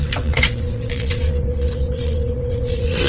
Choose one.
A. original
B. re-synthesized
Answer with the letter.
B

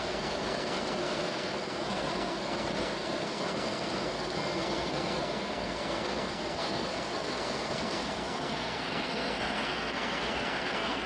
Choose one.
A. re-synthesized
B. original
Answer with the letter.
A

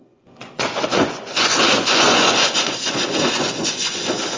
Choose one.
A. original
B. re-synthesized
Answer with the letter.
B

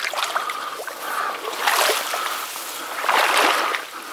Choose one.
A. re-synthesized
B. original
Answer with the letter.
B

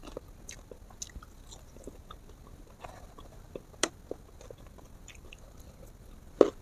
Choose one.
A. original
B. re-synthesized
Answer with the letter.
A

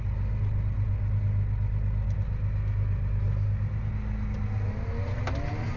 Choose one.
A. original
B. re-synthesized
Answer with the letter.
A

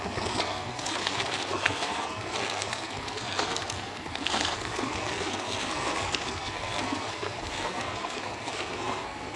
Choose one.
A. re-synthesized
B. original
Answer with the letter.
A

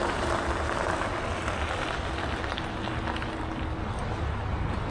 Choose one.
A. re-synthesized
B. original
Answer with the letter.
B